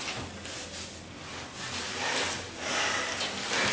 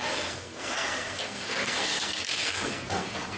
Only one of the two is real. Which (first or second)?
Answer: first